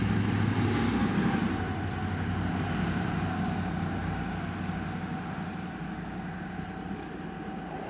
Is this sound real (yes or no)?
yes